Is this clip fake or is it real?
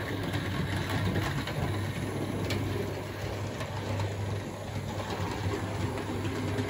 real